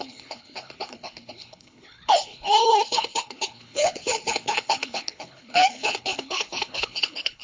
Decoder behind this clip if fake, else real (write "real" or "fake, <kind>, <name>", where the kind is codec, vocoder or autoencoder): fake, codec, HILCodec